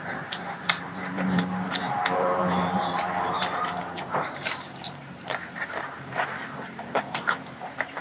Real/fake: fake